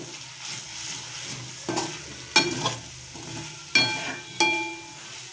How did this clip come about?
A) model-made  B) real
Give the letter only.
B